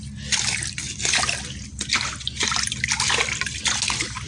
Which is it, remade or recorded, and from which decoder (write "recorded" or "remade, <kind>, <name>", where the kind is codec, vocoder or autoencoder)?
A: recorded